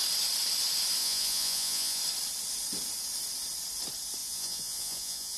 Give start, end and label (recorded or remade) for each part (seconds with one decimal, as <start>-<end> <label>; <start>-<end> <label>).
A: 0.0-1.0 recorded; 1.0-2.0 remade; 2.0-4.2 recorded; 4.2-5.4 remade